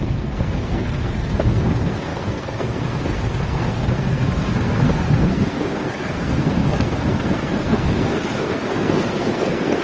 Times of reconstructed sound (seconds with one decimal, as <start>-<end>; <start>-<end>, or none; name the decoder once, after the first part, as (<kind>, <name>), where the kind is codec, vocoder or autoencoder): 0.0-9.8 (codec, SNAC)